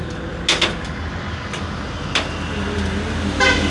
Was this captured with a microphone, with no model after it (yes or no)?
yes